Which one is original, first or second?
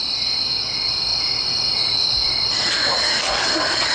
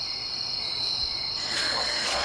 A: first